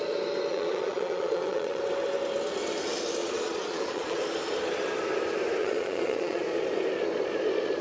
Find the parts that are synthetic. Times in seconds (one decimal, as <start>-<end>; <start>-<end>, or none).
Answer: 0.5-1.8; 3.2-4.2; 5.6-6.4